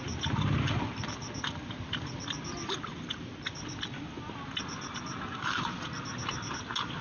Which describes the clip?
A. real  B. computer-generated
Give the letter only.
A